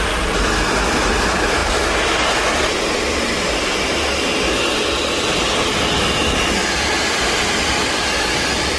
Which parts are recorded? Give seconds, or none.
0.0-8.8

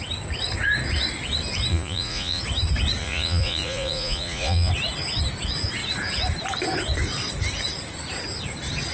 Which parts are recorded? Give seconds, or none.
0.0-1.7; 2.4-3.0; 4.7-8.9

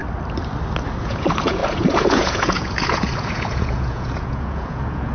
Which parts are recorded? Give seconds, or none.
0.0-1.0

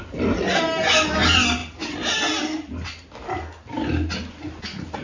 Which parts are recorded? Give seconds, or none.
0.0-5.0

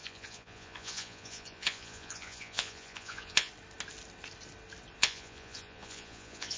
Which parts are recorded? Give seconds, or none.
3.5-5.0

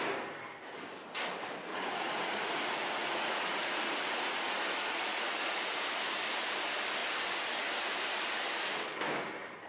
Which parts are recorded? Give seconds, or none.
0.0-1.7; 5.7-9.7

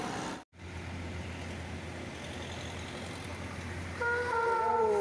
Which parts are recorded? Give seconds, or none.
0.0-5.0